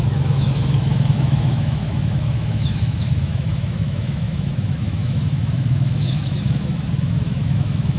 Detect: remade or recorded remade